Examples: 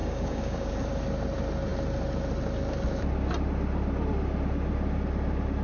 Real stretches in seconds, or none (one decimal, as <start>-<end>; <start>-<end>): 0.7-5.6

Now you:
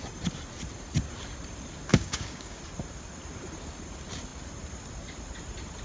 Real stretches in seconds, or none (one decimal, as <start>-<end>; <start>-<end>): 0.0-1.9; 2.6-5.8

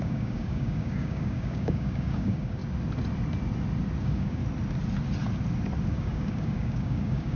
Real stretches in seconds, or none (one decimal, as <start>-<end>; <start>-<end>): 2.6-4.0; 4.4-5.9

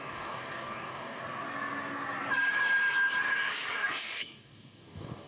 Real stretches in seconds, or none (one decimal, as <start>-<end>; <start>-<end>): 1.2-3.7

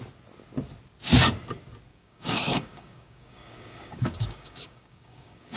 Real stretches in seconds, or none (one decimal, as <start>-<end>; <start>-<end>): 0.0-1.9